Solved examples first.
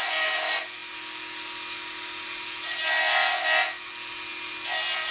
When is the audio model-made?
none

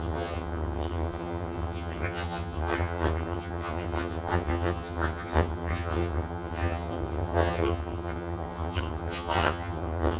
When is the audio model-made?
0.0-10.2 (vocoder, HiFi-GAN)

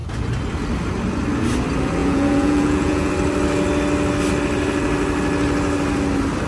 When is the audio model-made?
2.0-3.1 (vocoder, Vocos)

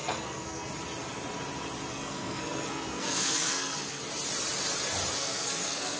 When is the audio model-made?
0.0-0.7 (codec, SNAC); 1.9-4.0; 5.2-6.0

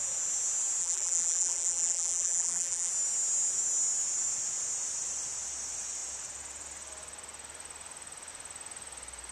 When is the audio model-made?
0.8-2.9 (vocoder, BigVGAN v2)

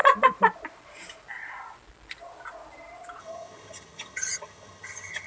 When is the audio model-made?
3.2-5.3 (vocoder, HiFi-GAN)

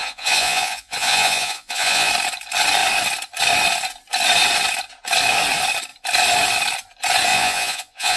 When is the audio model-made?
0.0-2.1 (vocoder, Vocos); 7.3-8.2